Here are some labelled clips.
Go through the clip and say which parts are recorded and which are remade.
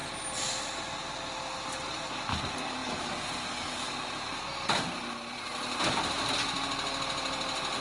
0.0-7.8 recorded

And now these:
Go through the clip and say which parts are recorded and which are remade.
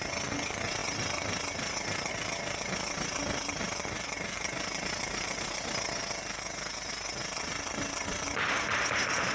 0.0-9.3 recorded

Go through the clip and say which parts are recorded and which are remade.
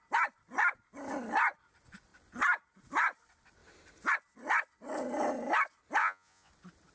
0.0-6.0 recorded; 6.0-6.5 remade; 6.5-6.9 recorded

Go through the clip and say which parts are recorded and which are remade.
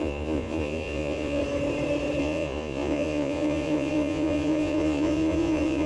0.0-1.4 remade; 1.4-2.2 recorded; 2.2-5.9 remade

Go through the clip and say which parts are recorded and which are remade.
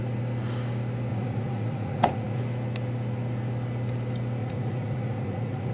0.0-1.1 recorded; 1.1-2.4 remade; 2.4-4.4 recorded; 4.4-5.7 remade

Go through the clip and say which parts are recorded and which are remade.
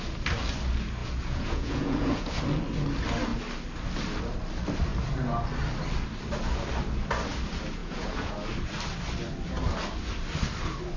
0.0-1.0 recorded; 1.0-2.3 remade; 2.3-7.8 recorded; 7.8-8.3 remade; 8.3-11.0 recorded